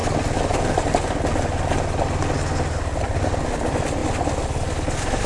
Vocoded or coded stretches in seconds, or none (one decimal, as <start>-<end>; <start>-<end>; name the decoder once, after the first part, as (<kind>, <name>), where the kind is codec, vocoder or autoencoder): none